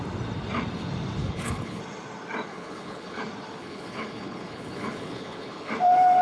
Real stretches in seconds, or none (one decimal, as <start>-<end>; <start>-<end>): 0.0-1.2; 1.8-2.5; 3.2-3.6; 5.7-6.2